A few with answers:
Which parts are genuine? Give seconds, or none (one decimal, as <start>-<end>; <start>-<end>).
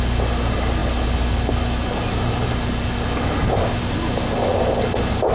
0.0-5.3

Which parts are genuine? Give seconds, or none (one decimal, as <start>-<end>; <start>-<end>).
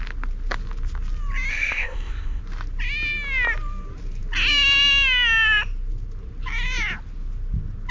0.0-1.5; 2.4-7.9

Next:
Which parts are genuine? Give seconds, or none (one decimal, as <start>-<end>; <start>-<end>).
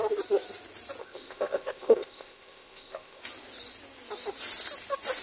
0.0-1.0; 3.2-5.2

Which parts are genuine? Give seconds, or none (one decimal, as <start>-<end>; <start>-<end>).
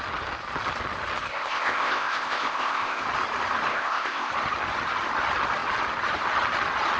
0.0-1.3; 3.0-3.7; 4.3-7.0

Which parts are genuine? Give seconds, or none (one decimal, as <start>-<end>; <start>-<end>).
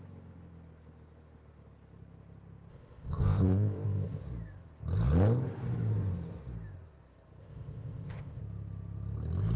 0.0-2.7; 4.2-7.4; 8.4-9.6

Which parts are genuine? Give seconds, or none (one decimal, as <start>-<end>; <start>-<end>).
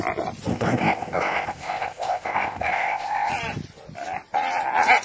0.0-0.5; 3.3-5.0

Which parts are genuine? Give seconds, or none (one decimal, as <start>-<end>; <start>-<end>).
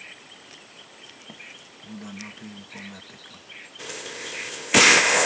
0.0-3.8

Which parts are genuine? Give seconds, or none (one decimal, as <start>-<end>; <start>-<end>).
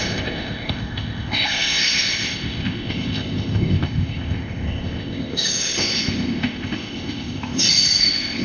none